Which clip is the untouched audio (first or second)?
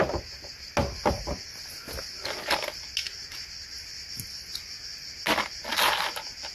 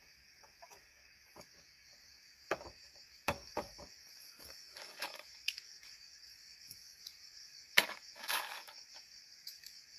first